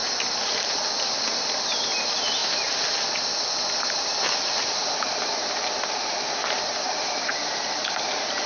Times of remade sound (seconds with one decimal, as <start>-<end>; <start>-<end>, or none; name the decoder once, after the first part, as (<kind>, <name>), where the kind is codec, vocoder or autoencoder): none